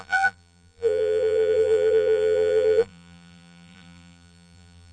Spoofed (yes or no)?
yes